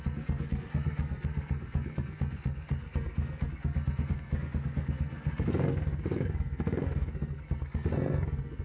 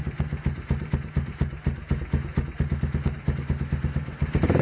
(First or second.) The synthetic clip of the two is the first